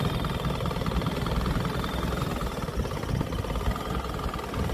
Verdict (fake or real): real